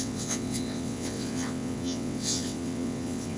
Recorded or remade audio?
remade